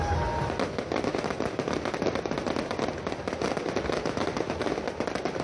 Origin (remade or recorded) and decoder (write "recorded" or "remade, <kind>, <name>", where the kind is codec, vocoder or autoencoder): recorded